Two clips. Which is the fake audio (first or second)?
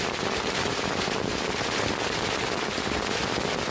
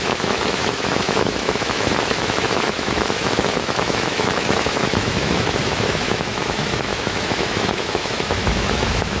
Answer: second